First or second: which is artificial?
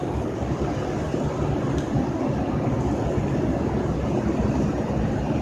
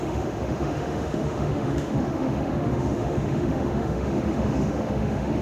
second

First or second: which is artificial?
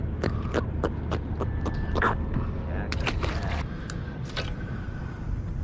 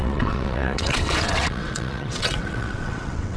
second